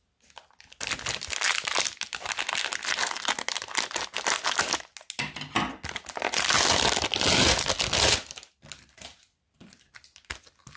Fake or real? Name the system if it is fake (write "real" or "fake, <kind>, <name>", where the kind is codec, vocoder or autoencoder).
real